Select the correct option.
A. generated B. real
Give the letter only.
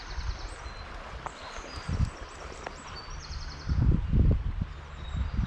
B